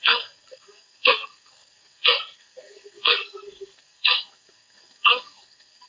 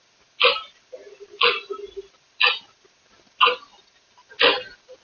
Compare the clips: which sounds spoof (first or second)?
first